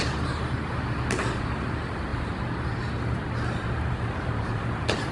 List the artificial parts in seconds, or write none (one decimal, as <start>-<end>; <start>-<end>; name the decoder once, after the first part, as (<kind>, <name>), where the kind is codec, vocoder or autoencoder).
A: none